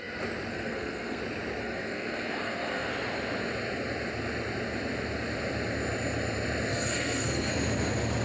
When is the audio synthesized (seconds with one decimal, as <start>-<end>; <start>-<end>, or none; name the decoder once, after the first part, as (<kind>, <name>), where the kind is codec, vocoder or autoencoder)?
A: 0.5-1.2 (codec, SNAC); 1.6-2.9; 6.7-7.5